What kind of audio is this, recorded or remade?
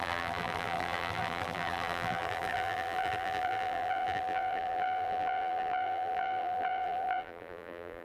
remade